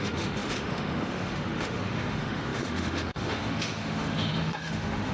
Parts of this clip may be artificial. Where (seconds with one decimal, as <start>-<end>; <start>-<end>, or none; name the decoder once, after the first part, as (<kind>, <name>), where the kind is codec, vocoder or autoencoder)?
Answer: 0.0-5.1 (autoencoder, DAC-VAE)